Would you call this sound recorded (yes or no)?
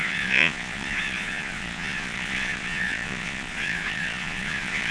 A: no